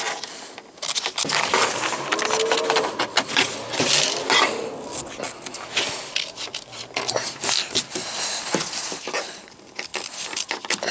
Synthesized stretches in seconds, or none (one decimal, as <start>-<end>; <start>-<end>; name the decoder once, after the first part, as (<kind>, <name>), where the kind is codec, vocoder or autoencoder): 9.9-10.5 (vocoder, BigVGAN v2)